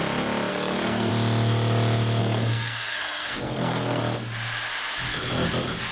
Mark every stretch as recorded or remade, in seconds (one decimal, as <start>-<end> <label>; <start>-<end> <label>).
0.0-0.5 recorded; 0.5-1.1 remade; 1.1-2.2 recorded; 2.2-4.0 remade; 4.0-5.9 recorded